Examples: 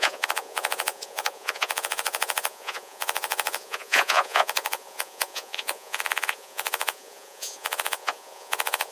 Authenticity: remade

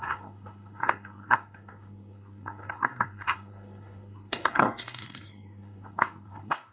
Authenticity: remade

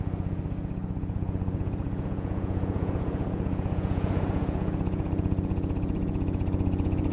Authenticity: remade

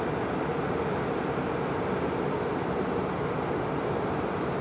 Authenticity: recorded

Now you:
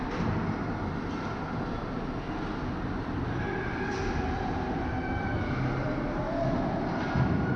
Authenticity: recorded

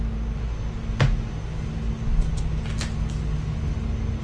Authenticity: recorded